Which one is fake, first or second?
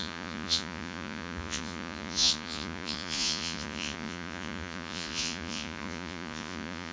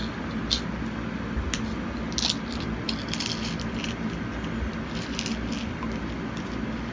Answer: first